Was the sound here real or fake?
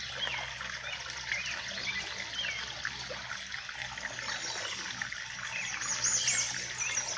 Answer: real